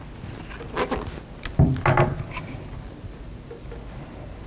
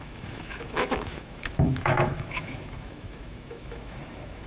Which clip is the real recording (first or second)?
first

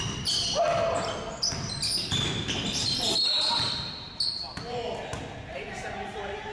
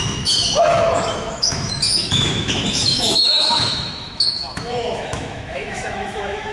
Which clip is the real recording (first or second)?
first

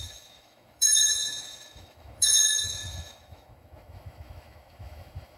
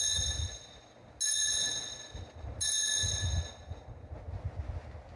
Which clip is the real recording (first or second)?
second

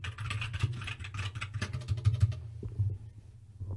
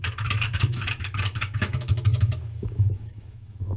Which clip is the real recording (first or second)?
first